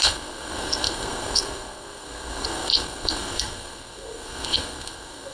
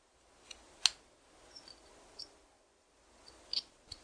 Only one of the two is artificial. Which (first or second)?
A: first